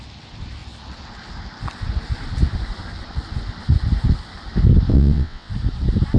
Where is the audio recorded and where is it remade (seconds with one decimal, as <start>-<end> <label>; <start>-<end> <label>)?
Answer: 0.0-4.9 recorded; 4.9-5.5 remade; 5.5-6.2 recorded